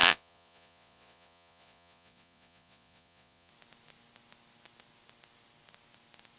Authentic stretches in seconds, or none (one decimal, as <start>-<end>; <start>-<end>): 3.5-6.4